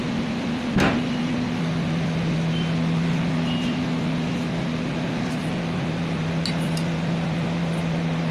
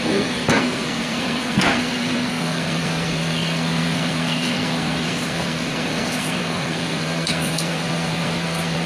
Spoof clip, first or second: second